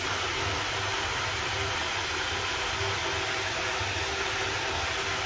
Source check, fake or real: real